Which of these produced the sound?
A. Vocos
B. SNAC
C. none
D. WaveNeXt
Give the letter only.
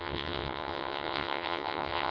D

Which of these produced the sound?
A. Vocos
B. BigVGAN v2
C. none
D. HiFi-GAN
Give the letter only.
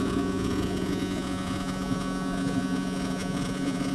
A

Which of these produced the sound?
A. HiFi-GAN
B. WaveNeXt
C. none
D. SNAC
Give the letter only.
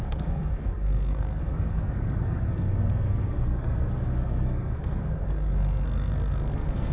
D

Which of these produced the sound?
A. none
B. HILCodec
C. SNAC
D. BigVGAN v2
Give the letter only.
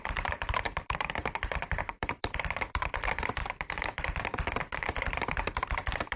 D